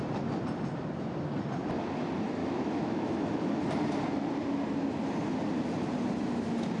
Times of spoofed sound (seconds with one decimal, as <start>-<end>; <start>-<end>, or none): 2.4-3.6